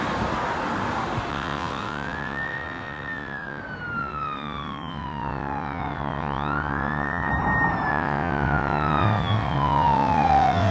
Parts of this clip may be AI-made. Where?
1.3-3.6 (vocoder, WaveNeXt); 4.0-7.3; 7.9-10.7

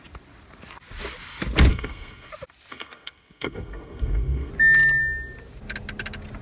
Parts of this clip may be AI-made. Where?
1.7-2.3 (codec, SNAC); 2.7-4.5

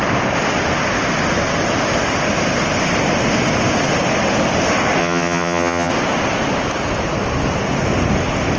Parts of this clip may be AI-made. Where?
5.0-5.9 (vocoder, HiFi-GAN)

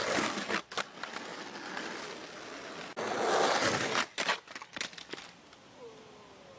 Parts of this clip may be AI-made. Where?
none

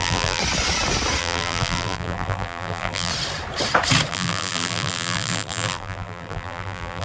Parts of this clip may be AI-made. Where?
0.0-0.4 (vocoder, BigVGAN v2); 1.2-3.1; 4.1-7.0

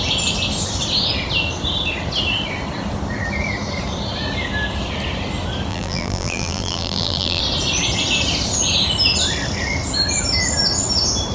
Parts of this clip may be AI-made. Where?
5.7-7.4 (vocoder, BigVGAN v2)

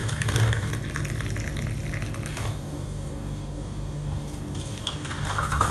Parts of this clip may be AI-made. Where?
0.0-0.7 (codec, DAC); 2.3-5.7